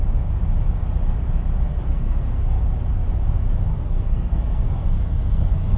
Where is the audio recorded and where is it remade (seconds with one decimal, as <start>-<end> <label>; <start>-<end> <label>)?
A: 0.0-1.7 recorded; 1.7-2.6 remade; 2.6-3.7 recorded; 3.7-5.8 remade